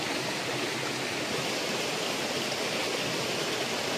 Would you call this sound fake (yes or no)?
no